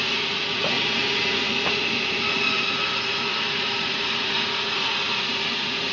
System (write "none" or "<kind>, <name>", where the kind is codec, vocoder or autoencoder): vocoder, Vocos